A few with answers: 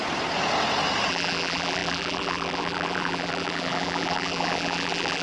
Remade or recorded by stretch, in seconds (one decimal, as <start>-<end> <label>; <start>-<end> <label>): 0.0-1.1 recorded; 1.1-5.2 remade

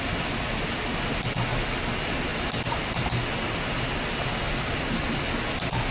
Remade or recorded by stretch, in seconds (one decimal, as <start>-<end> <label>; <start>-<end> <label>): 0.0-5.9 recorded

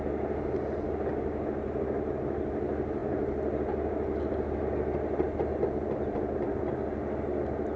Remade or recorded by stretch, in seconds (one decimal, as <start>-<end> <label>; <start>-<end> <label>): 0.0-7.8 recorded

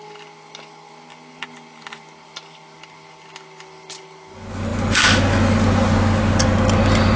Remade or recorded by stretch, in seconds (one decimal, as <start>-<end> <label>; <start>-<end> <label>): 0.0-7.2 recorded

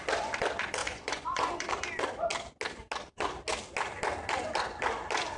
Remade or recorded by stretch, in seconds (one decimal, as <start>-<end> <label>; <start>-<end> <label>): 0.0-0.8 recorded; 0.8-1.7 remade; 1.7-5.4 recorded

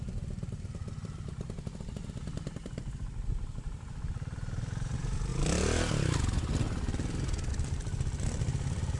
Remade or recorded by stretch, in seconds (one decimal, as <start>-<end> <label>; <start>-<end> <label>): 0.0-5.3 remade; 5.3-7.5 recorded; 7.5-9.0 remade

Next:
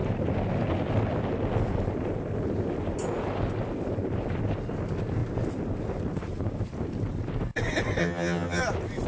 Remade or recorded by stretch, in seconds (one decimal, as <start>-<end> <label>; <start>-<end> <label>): 0.0-8.0 recorded; 8.0-8.6 remade; 8.6-9.1 recorded

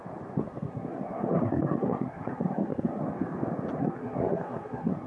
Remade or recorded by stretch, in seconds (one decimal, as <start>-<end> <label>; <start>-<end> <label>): 0.0-0.4 recorded; 0.4-3.0 remade; 3.0-3.8 recorded; 3.8-5.1 remade